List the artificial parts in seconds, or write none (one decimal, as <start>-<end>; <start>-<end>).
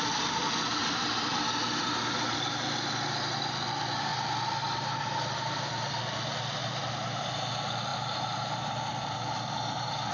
0.8-1.4; 4.1-5.0; 6.6-7.3; 7.9-10.1